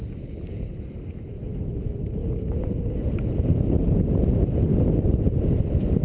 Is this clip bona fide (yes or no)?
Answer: yes